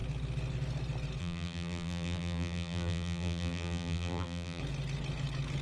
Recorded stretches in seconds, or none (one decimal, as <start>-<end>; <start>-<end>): 0.0-1.2; 4.6-5.6